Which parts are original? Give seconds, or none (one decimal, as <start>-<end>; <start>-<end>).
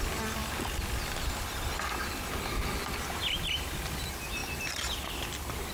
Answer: 0.0-5.7